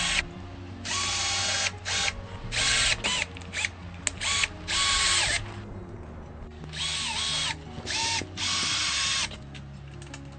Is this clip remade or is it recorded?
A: recorded